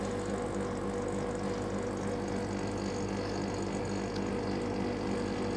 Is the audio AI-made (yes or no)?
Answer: no